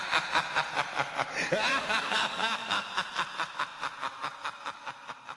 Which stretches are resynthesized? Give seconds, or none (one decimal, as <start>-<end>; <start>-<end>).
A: 1.7-2.9